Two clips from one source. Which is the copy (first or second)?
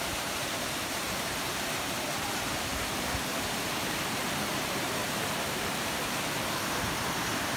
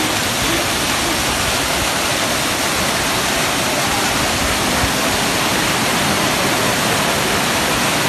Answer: first